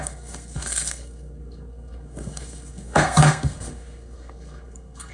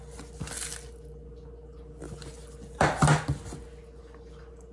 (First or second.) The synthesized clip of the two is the first